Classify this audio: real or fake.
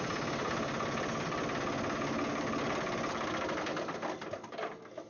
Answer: real